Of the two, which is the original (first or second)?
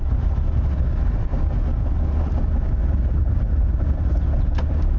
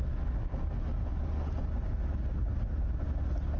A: second